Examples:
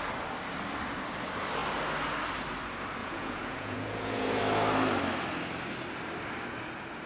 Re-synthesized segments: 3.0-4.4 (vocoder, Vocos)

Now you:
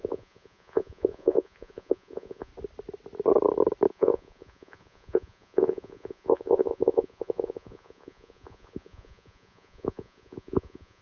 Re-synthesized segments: 0.0-2.5 (vocoder, Vocos); 3.9-11.0